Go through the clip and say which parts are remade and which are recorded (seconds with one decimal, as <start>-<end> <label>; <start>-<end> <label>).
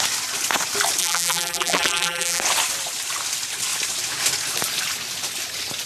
0.0-1.0 recorded; 1.0-2.4 remade; 2.4-5.9 recorded